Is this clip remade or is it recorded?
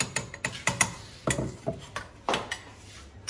recorded